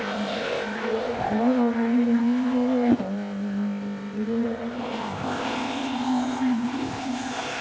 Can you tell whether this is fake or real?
fake